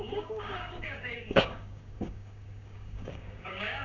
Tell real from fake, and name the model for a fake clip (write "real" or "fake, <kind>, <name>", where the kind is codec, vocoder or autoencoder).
fake, codec, DAC